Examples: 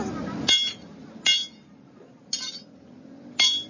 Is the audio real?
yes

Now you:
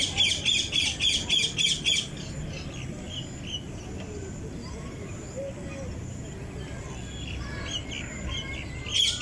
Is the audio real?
yes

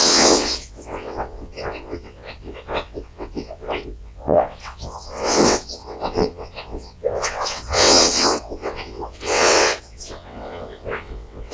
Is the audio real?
no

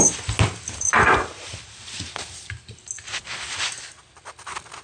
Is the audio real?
yes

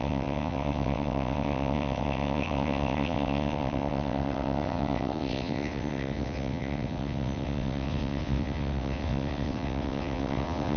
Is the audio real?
no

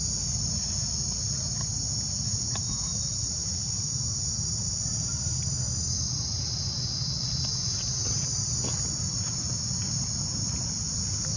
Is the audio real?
yes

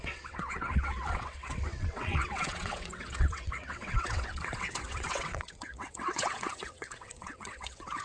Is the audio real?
no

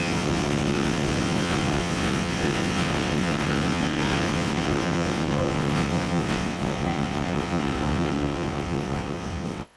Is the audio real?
no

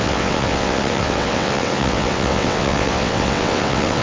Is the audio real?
no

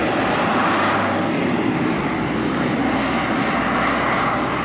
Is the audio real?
yes